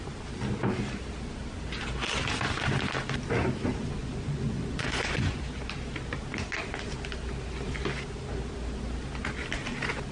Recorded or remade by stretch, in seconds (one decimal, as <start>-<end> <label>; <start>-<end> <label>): 0.0-4.0 recorded; 4.0-5.4 remade; 5.4-10.1 recorded

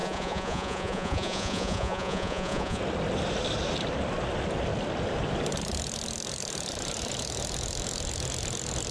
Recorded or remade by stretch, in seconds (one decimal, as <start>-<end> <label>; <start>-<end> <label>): 0.0-2.8 remade; 2.8-8.9 recorded

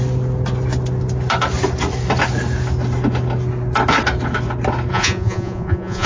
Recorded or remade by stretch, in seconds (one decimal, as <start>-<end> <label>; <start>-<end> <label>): 0.0-4.9 recorded; 4.9-6.1 remade

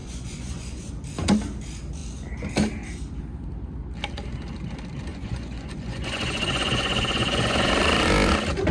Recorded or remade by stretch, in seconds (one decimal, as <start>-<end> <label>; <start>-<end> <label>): 0.0-0.9 remade; 0.9-5.1 recorded; 5.1-7.7 remade; 7.7-8.7 recorded